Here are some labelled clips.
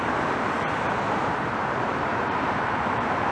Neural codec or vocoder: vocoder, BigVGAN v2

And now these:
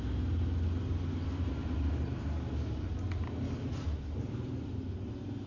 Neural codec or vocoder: none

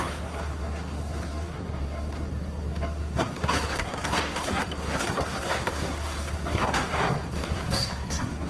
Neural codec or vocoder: codec, SNAC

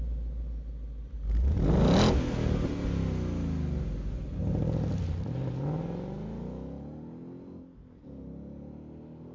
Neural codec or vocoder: none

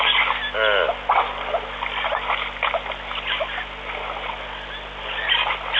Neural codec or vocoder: none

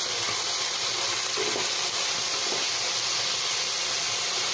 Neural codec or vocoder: vocoder, BigVGAN v2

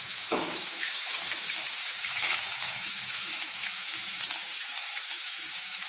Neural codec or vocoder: autoencoder, DAC-VAE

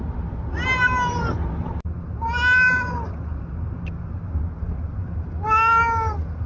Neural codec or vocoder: none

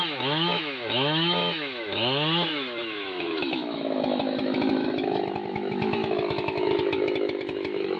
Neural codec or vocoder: autoencoder, DAC-VAE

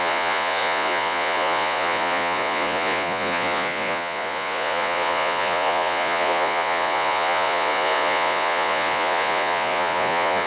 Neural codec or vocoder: vocoder, Vocos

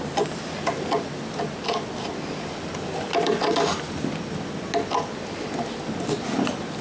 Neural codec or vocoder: none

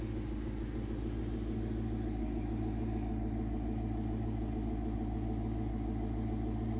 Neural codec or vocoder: none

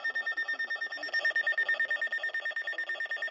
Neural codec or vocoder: none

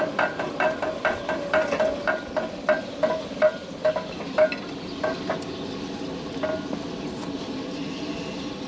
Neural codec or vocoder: none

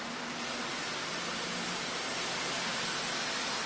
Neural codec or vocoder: none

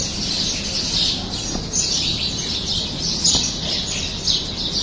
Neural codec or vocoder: none